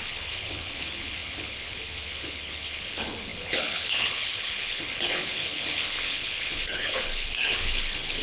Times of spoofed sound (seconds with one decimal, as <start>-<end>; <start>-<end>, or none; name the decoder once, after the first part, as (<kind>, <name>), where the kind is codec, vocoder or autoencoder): 0.0-8.2 (codec, HILCodec)